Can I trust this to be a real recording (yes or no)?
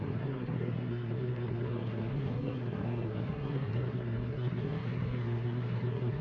no